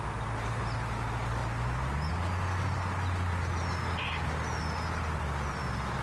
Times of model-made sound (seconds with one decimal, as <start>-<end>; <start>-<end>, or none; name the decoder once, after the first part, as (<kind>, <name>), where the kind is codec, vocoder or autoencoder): none